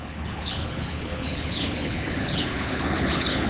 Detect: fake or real fake